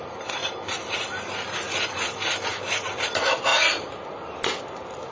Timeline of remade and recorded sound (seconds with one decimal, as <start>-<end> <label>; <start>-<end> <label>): 0.0-3.5 recorded; 3.5-4.6 remade; 4.6-5.1 recorded